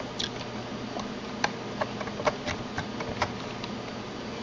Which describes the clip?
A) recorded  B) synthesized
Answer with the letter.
A